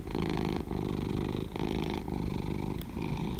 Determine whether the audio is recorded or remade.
remade